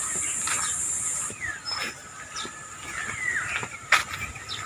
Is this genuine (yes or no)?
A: yes